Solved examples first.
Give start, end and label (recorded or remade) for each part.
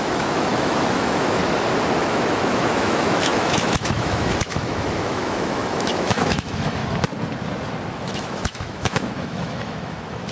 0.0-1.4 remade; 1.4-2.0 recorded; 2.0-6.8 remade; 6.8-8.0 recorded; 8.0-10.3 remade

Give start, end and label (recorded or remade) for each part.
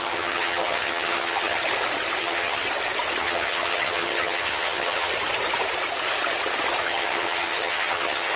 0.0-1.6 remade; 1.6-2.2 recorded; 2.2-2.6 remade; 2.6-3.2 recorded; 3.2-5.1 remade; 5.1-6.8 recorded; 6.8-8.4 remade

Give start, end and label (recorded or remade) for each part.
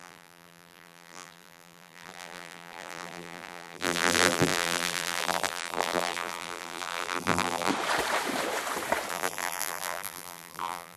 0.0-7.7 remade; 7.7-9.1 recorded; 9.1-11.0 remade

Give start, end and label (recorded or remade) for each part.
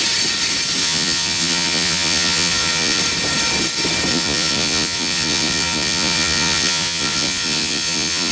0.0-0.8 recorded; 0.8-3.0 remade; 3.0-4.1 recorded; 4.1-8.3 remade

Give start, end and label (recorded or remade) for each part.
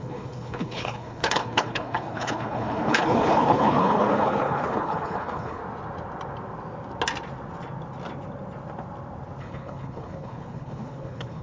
0.0-5.6 remade; 5.6-9.4 recorded; 9.4-11.4 remade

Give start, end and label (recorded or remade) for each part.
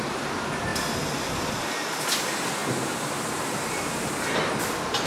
0.0-0.7 recorded; 0.7-2.0 remade; 2.0-5.1 recorded